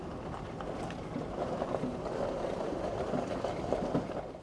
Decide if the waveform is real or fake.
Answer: real